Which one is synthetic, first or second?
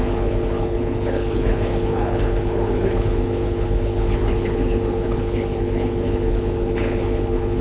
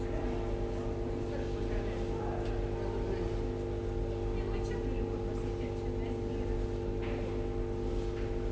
first